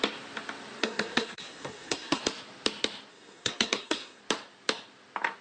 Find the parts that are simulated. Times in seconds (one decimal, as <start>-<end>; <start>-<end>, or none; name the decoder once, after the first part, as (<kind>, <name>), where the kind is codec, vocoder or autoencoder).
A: 0.8-2.2 (codec, SNAC); 3.1-4.2